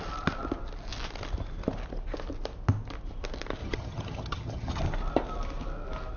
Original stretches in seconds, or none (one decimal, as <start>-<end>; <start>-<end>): 0.0-3.6; 4.8-6.2